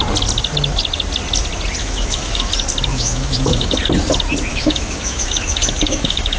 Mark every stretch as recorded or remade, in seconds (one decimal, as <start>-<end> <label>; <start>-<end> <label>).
0.0-1.8 recorded; 1.8-2.5 remade; 2.5-2.9 recorded; 2.9-3.8 remade; 3.8-4.5 recorded; 4.5-6.4 remade